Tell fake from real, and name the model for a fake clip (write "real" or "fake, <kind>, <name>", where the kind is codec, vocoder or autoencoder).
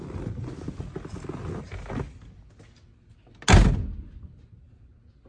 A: real